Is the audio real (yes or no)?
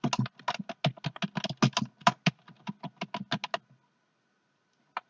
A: yes